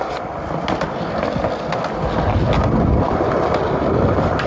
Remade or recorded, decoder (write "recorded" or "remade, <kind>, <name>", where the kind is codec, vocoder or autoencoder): recorded